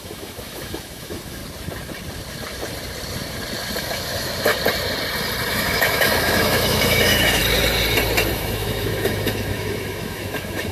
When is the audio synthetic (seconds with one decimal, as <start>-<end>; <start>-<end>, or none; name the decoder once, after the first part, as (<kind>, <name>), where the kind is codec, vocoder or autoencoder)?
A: 0.0-1.4 (autoencoder, DAC-VAE); 3.8-4.5; 5.5-7.4; 8.3-10.7